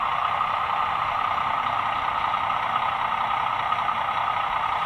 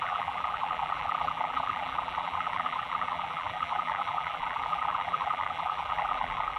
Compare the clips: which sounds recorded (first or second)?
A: first